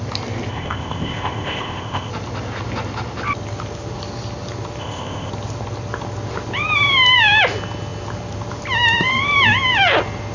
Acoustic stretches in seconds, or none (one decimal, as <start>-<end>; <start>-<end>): 0.0-0.5; 2.1-4.8; 5.3-10.3